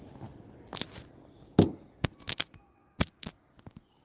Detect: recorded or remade recorded